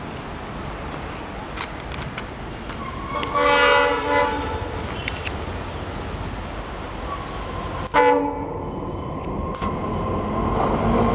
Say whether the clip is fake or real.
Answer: real